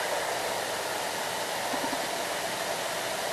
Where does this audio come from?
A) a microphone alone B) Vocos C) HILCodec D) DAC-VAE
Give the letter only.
A